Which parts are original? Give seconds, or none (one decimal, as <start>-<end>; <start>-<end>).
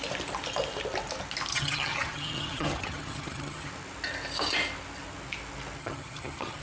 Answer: 0.0-1.5; 3.7-5.8